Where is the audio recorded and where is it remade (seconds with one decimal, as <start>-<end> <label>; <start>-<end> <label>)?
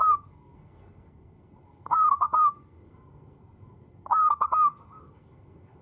0.0-5.8 remade